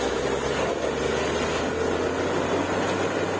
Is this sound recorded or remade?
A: recorded